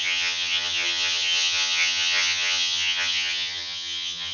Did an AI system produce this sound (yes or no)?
yes